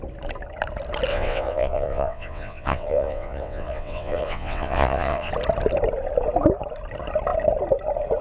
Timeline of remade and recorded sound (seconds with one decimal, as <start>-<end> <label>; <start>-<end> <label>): 0.0-1.1 recorded; 1.1-5.3 remade; 5.3-8.2 recorded